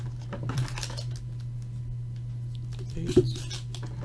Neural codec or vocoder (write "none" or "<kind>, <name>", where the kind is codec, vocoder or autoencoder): none